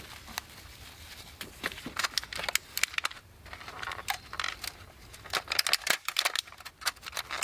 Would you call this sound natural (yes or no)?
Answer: yes